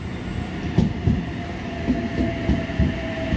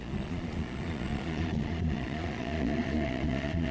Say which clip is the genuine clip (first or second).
first